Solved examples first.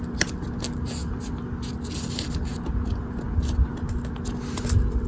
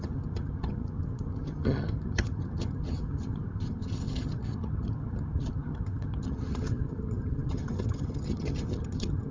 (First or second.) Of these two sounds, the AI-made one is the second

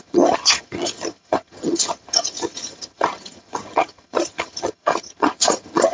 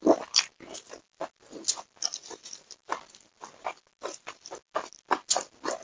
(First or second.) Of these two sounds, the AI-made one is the first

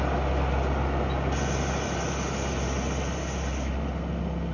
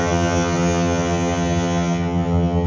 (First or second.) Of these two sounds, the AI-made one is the second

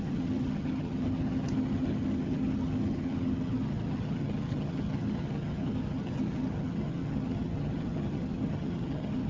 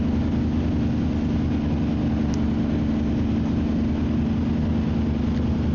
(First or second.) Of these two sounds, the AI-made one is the first